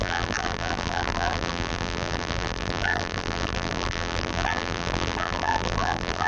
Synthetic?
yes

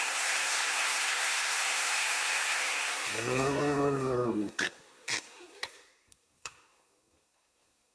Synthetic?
yes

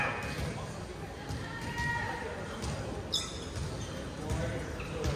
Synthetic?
no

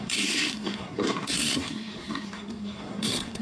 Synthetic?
yes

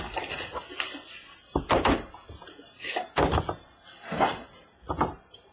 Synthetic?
yes